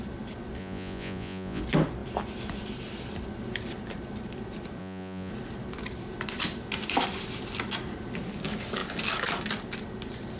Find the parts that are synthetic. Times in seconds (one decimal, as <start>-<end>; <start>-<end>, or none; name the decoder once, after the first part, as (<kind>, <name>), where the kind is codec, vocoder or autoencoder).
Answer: 0.6-1.6 (vocoder, Vocos); 4.8-5.3